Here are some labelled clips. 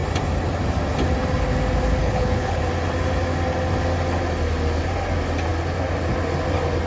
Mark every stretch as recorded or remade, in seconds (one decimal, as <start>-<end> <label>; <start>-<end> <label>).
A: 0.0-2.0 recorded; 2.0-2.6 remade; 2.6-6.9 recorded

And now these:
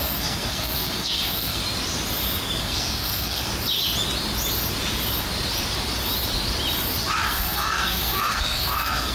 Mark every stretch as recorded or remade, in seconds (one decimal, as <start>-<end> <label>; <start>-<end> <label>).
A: 0.0-1.6 remade; 1.6-2.6 recorded; 2.6-3.5 remade; 3.5-7.1 recorded; 7.1-9.1 remade

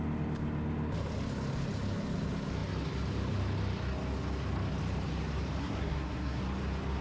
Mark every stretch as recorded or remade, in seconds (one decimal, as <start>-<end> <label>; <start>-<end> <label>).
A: 0.0-5.6 recorded; 5.6-6.4 remade; 6.4-7.0 recorded

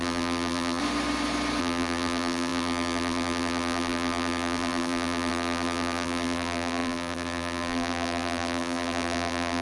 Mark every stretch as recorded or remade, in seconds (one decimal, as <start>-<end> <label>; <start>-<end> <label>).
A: 0.0-0.8 remade; 0.8-1.6 recorded; 1.6-9.6 remade

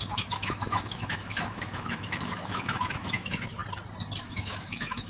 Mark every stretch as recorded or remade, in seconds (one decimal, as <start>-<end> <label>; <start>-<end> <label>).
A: 0.0-3.6 remade; 3.6-4.2 recorded; 4.2-5.1 remade

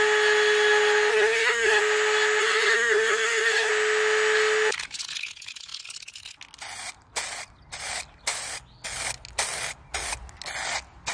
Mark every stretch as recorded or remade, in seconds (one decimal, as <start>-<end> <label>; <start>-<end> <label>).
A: 0.0-1.1 recorded; 1.1-1.8 remade; 1.8-2.4 recorded; 2.4-3.7 remade; 3.7-11.1 recorded

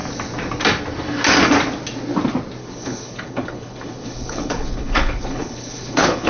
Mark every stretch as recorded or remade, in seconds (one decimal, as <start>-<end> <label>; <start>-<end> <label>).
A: 0.0-2.6 recorded; 2.6-6.3 remade